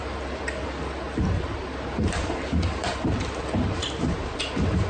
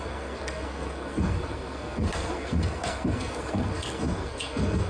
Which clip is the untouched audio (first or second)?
first